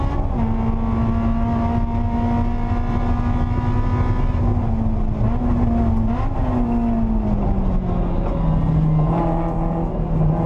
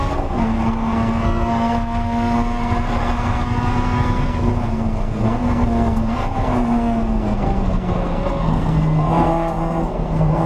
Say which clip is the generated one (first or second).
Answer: second